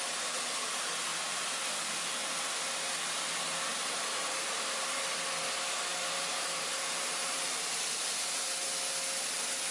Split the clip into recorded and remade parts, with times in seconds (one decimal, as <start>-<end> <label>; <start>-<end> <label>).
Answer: 0.0-3.7 recorded; 3.7-5.0 remade; 5.0-5.9 recorded; 5.9-8.5 remade; 8.5-9.7 recorded